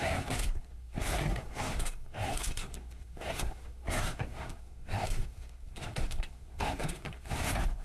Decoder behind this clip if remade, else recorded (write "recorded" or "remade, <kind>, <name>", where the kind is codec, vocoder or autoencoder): remade, codec, SNAC